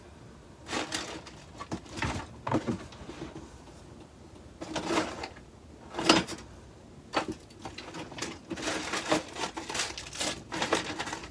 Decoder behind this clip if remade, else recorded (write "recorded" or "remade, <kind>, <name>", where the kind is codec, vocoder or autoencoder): recorded